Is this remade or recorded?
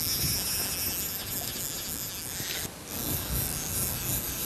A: recorded